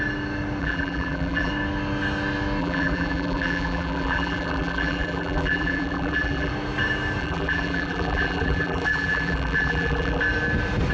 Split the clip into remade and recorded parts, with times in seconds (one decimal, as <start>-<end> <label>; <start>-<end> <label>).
0.0-0.6 recorded; 0.6-1.5 remade; 1.5-2.6 recorded; 2.6-6.5 remade; 6.5-7.2 recorded; 7.2-10.2 remade; 10.2-10.9 recorded